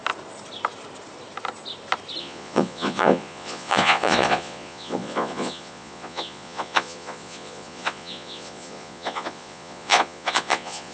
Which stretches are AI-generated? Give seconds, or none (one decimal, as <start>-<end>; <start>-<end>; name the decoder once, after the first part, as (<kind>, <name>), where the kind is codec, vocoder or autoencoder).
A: 2.2-10.9 (vocoder, Vocos)